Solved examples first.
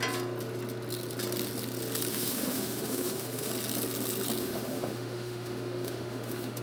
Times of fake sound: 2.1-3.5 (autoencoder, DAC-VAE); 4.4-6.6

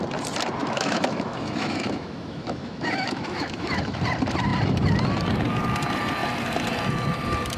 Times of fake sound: 0.6-4.0 (autoencoder, DAC-VAE)